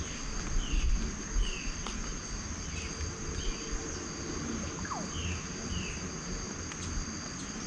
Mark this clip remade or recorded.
recorded